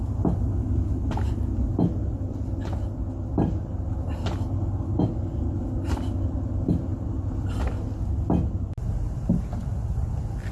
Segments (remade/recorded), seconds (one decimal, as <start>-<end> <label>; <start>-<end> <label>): 0.0-10.5 recorded